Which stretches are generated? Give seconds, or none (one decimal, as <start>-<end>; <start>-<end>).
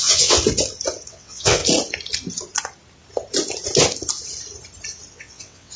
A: 0.0-0.4; 1.1-1.6; 5.1-5.8